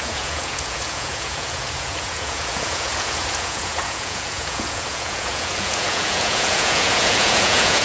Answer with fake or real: fake